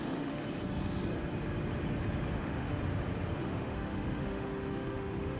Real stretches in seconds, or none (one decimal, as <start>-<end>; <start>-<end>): 0.4-2.3; 2.8-3.4